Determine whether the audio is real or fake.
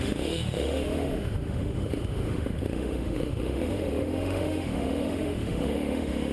fake